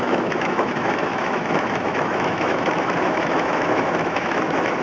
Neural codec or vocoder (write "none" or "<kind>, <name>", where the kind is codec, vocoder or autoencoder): autoencoder, DAC-VAE